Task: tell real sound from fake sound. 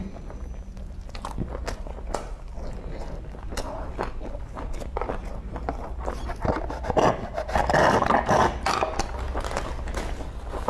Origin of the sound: real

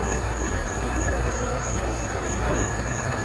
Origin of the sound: fake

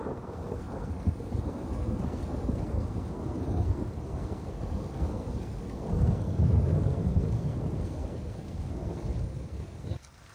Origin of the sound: fake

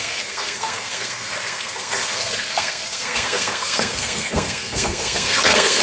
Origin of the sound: fake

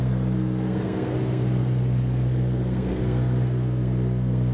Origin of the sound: fake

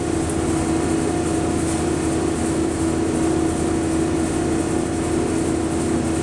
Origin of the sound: real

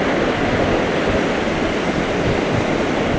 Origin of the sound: real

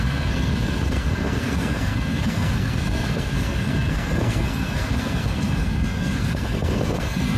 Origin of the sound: fake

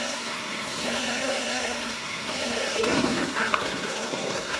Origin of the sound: fake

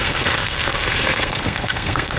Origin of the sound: fake